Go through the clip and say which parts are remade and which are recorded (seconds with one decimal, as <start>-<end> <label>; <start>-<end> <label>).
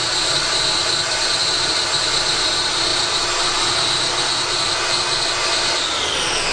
0.0-6.5 recorded